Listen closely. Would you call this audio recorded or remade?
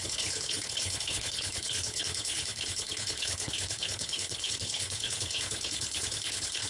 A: remade